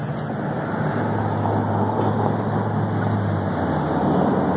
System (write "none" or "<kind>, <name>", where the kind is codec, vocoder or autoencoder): none